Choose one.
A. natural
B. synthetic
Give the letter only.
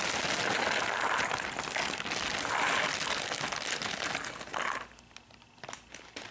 A